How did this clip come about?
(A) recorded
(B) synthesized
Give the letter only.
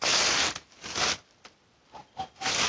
A